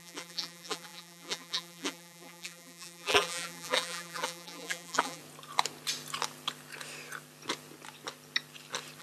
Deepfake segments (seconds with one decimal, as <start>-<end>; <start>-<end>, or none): 0.0-5.2